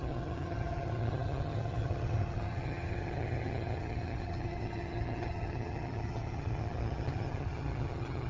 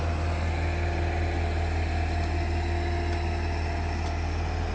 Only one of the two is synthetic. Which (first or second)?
first